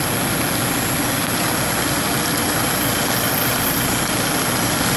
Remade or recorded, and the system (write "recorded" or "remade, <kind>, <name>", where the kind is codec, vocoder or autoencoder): recorded